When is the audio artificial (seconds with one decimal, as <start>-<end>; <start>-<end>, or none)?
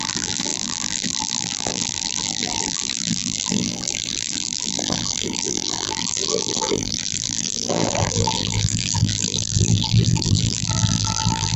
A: 0.0-11.6